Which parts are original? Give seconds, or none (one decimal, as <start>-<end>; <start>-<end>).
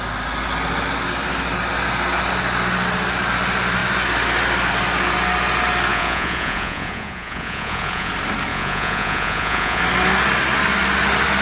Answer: 0.0-5.9; 8.1-8.5; 9.8-11.4